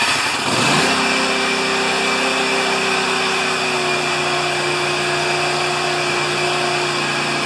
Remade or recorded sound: recorded